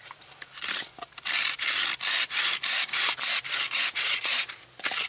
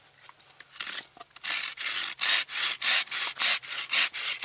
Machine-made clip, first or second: first